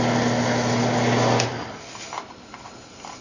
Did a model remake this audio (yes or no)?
no